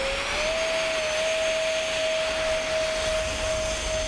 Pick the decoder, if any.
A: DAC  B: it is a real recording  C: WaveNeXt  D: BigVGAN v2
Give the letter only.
B